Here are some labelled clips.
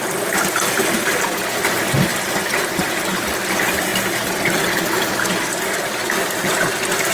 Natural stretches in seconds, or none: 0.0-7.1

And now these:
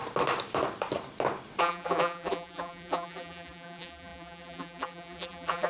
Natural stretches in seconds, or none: 0.0-1.6

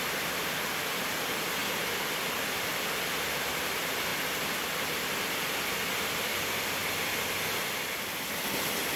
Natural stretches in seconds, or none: 0.0-9.0

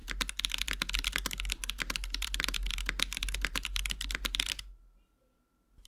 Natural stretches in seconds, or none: 0.0-5.9

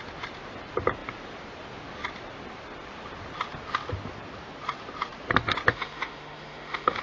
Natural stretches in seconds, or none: 0.0-5.7

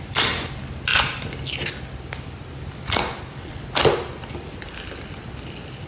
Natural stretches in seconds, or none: 0.0-5.9

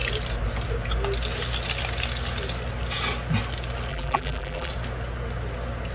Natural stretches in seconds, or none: 0.0-3.9; 4.7-5.9

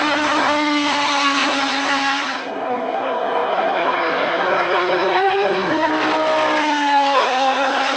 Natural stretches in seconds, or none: 5.9-6.6